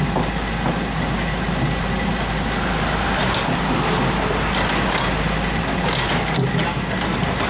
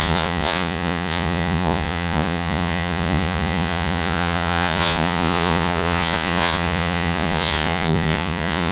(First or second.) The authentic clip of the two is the first